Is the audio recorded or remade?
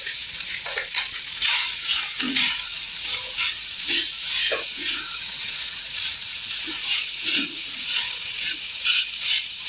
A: remade